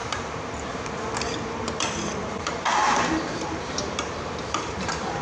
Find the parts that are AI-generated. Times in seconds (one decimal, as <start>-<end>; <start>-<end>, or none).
0.0-5.2